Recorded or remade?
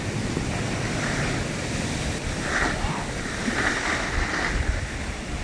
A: recorded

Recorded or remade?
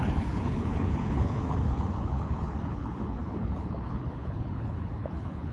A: remade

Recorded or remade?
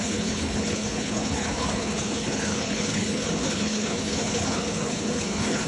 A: remade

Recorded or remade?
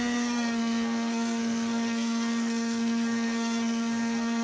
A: remade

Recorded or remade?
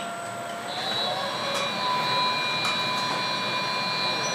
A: recorded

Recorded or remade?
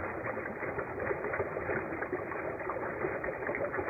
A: remade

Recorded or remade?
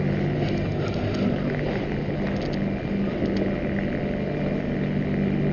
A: recorded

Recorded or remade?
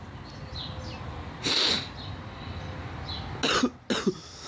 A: recorded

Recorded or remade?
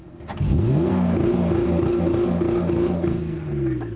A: remade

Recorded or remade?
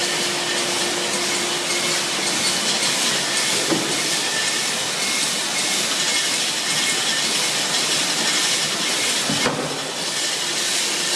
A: recorded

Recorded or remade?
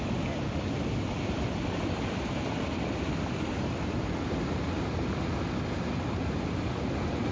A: recorded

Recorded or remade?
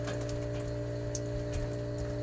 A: recorded